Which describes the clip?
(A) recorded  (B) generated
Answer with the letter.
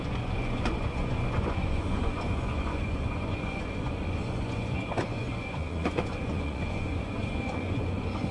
B